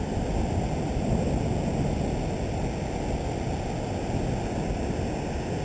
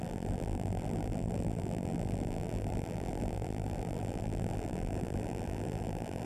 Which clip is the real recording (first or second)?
first